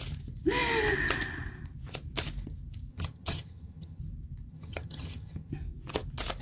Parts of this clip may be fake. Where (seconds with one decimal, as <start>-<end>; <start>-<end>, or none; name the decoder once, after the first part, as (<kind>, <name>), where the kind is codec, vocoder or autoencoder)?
2.9-4.0 (vocoder, HiFi-GAN); 4.5-5.5